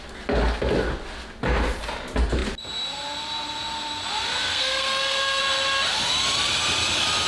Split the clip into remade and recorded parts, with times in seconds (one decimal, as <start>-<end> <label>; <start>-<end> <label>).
0.0-4.5 recorded; 4.5-5.4 remade; 5.4-7.3 recorded